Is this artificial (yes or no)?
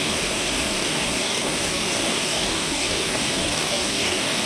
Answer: yes